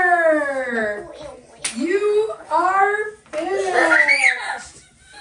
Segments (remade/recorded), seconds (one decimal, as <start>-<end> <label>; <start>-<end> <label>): 0.0-5.2 recorded